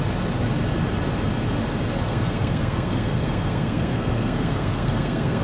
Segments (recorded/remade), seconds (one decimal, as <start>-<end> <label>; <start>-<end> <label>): 0.0-2.1 recorded; 2.1-5.4 remade